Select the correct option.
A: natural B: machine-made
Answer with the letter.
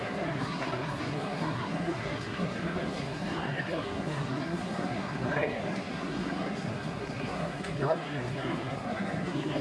B